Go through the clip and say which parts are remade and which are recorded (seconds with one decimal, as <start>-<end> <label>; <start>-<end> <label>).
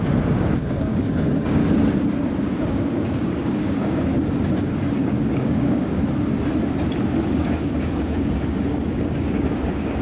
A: 0.0-1.6 remade; 1.6-2.6 recorded; 2.6-4.1 remade; 4.1-4.9 recorded; 4.9-6.0 remade; 6.0-7.2 recorded; 7.2-10.0 remade